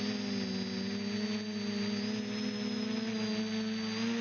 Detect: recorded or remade recorded